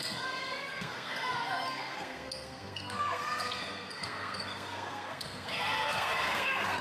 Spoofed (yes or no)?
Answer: yes